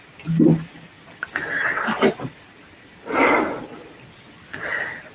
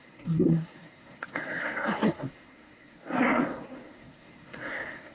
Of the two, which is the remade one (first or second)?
second